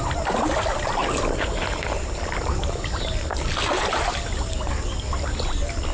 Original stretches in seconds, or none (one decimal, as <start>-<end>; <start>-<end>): 0.0-5.9